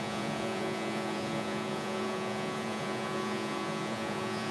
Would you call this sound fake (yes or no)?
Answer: yes